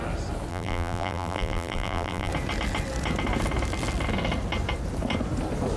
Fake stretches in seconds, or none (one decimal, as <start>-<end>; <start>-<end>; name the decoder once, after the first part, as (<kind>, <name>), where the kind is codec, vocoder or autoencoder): 0.5-2.3 (vocoder, BigVGAN v2)